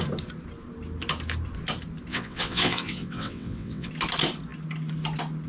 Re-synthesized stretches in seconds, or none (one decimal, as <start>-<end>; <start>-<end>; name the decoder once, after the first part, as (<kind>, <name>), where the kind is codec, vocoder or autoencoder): 2.1-3.9 (vocoder, WaveNeXt)